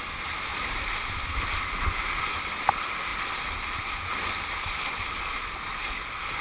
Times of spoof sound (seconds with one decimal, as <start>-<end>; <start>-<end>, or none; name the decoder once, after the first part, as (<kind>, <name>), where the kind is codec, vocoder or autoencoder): none